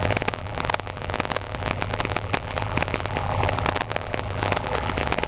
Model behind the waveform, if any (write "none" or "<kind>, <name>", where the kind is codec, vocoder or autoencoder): vocoder, BigVGAN v2